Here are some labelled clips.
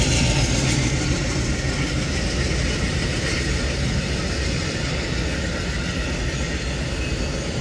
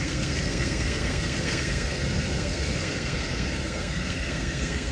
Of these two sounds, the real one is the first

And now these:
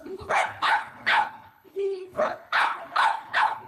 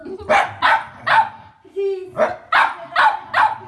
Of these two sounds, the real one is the second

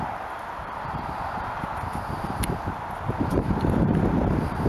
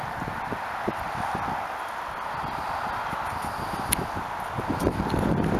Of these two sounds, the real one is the second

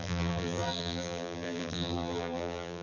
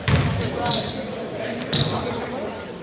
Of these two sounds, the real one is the second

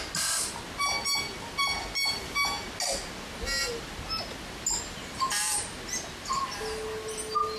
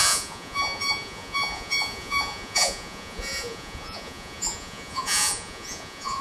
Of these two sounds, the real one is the first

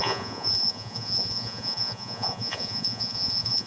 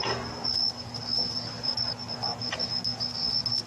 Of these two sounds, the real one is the second